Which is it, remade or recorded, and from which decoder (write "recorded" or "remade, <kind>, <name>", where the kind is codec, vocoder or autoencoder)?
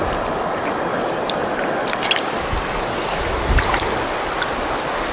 recorded